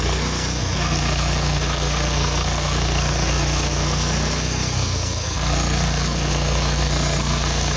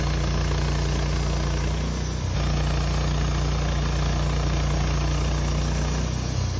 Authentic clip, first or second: second